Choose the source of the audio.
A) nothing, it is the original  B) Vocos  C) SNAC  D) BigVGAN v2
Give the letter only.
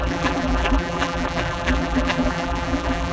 D